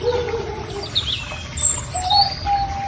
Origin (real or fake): real